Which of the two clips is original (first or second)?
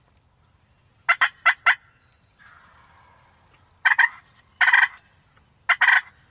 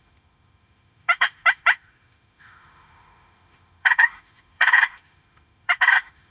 first